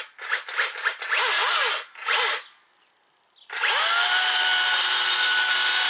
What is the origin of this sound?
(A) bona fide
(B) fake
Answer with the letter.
A